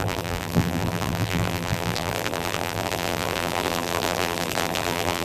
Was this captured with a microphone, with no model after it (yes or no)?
no